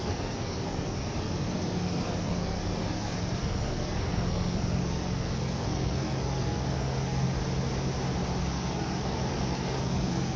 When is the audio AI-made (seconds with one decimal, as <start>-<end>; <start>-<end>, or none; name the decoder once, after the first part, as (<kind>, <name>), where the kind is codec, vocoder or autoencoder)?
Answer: 0.0-7.4 (codec, SNAC); 8.4-10.4